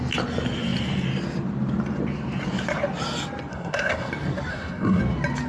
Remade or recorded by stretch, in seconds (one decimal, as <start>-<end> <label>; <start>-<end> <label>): 0.0-3.5 recorded; 3.5-4.1 remade; 4.1-4.5 recorded; 4.5-5.0 remade; 5.0-5.5 recorded